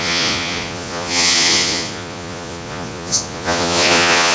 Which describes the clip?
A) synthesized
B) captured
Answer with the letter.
A